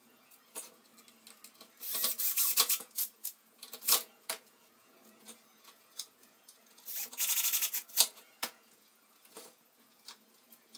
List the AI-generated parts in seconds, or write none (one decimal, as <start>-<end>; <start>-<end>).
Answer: 0.0-0.9; 2.2-10.8